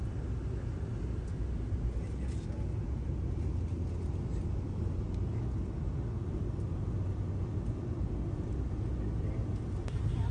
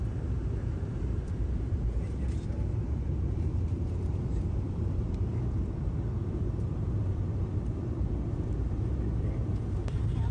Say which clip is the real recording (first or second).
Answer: first